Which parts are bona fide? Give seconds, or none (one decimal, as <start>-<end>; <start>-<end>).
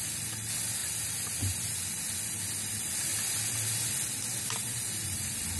0.0-5.6